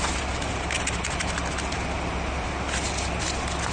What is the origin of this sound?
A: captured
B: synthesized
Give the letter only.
A